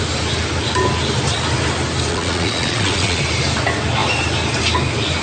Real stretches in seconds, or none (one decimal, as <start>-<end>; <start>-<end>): 0.0-2.1; 3.2-5.2